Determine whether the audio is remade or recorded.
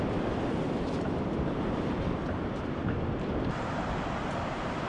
remade